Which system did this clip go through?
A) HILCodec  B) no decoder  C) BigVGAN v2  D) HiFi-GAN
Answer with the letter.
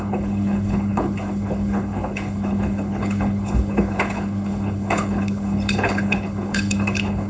A